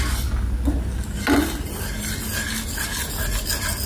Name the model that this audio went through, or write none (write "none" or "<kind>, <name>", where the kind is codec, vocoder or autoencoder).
none